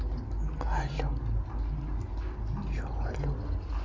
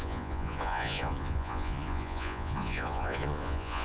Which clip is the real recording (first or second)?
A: first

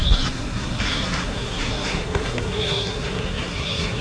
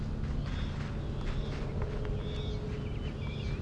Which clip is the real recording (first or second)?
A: second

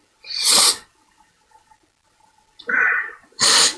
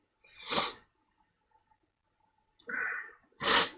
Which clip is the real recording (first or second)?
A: second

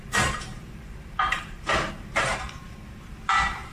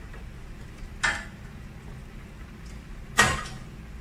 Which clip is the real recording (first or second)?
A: second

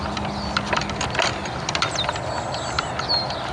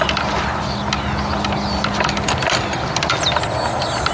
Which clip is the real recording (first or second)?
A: second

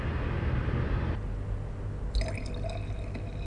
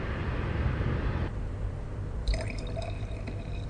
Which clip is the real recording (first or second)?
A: first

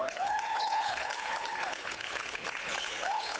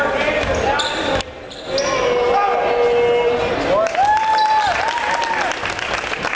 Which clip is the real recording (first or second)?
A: second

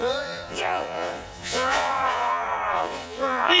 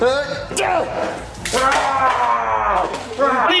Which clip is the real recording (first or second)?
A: second